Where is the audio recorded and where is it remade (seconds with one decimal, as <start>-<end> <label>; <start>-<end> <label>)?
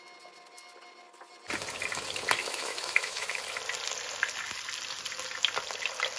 0.0-2.4 recorded; 2.4-3.4 remade; 3.4-6.2 recorded